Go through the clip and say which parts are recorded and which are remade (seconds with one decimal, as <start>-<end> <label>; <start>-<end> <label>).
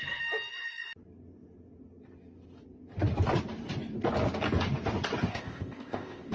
0.0-5.3 recorded; 5.3-6.3 remade